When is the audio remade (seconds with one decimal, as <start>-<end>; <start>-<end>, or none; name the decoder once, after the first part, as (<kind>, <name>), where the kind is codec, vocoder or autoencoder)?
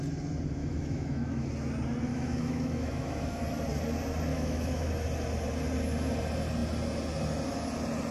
0.6-1.5 (autoencoder, DAC-VAE); 2.1-3.4; 4.3-4.9